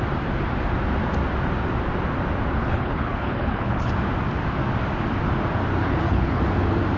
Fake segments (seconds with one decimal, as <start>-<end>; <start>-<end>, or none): 2.6-3.9; 5.8-6.4